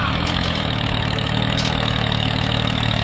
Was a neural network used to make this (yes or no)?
yes